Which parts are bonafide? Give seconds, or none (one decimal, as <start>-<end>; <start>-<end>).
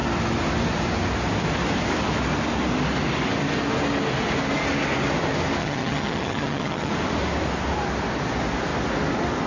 0.0-5.6; 6.9-9.5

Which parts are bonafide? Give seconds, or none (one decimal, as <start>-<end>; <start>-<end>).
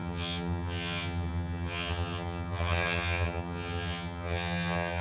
none